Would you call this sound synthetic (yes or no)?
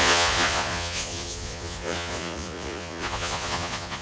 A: yes